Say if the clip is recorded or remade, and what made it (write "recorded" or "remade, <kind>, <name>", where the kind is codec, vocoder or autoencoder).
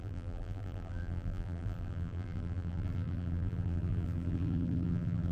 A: remade, vocoder, BigVGAN v2